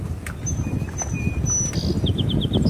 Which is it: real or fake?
real